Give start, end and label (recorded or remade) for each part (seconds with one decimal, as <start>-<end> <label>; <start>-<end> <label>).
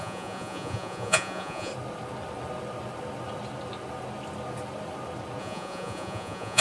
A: 0.0-1.7 remade; 1.7-5.4 recorded; 5.4-6.6 remade